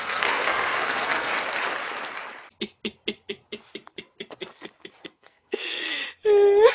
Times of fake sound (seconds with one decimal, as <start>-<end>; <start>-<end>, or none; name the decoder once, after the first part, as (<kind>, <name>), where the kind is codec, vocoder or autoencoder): 0.0-1.3 (codec, SNAC); 5.0-6.0